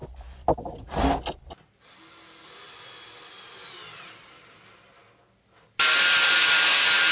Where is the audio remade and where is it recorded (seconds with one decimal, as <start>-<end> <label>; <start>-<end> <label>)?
0.0-7.1 recorded